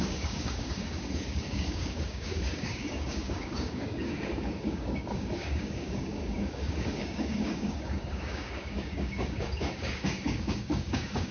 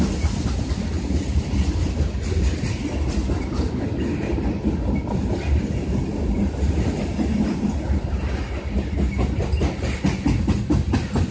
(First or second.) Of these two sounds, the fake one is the first